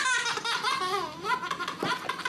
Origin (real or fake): real